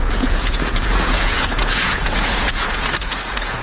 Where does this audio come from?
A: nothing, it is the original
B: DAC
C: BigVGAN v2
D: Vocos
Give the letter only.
D